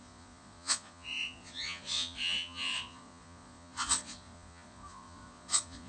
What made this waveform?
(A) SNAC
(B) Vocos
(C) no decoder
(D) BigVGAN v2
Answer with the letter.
B